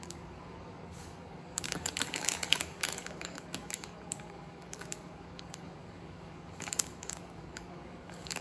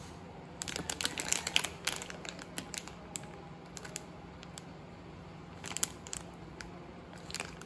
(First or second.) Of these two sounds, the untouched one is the second